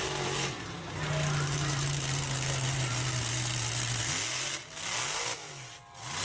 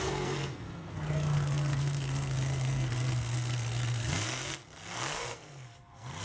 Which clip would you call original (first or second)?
first